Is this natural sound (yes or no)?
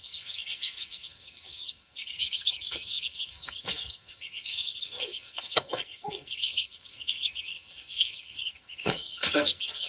no